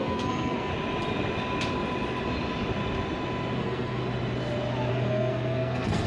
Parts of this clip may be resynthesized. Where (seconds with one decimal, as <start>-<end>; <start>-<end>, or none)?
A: 0.0-0.7; 3.6-4.0; 4.9-6.1